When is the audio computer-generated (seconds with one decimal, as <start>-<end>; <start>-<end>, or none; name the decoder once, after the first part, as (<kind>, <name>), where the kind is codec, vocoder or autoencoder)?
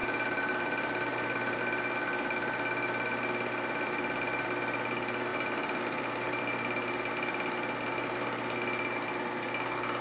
0.0-1.6 (vocoder, BigVGAN v2); 5.3-6.4